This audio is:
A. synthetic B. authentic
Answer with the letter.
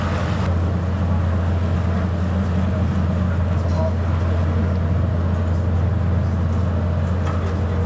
B